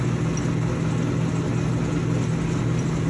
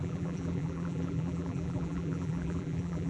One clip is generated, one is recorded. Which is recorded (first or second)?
first